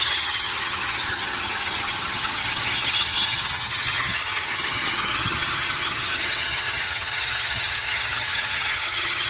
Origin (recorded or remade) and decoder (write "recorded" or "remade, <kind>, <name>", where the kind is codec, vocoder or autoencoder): remade, vocoder, HiFi-GAN